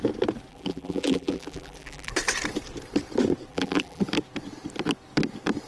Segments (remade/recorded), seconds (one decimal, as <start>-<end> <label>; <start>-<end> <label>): 0.0-0.5 recorded; 0.5-2.1 remade; 2.1-3.5 recorded; 3.5-4.0 remade; 4.0-5.7 recorded